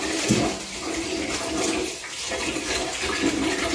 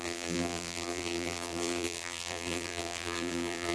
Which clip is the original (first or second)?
first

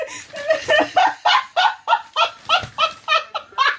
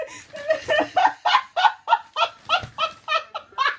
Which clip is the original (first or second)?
second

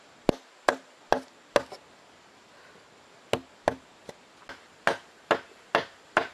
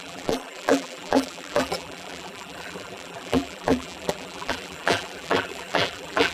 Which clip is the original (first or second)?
first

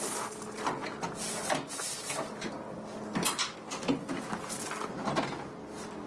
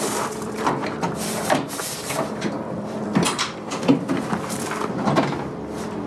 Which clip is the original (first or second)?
first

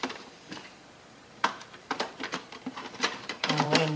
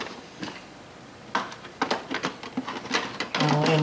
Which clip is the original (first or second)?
second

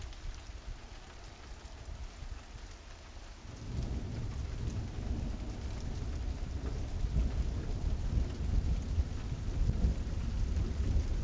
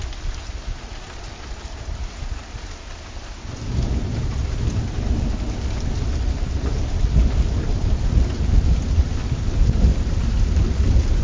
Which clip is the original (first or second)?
first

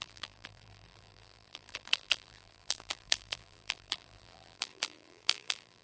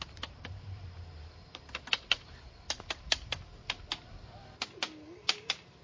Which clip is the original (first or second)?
second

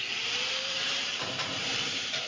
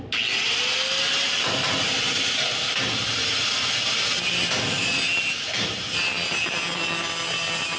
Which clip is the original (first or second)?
second